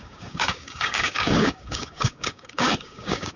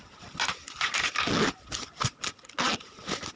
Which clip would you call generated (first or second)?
first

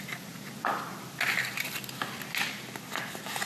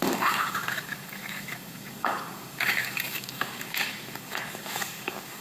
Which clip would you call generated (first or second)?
second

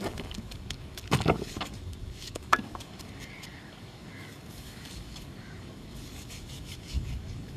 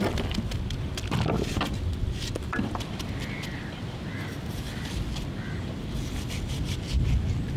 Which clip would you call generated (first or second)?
first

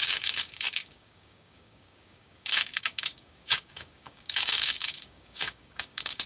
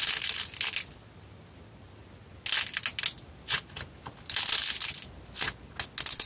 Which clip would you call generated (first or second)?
first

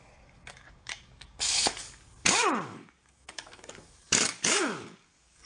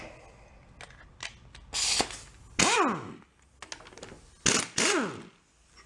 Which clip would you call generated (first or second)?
first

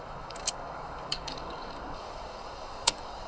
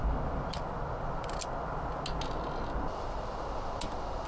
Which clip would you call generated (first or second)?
first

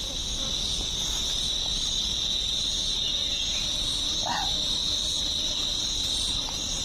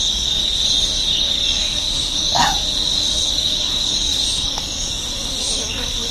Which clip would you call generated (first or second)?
second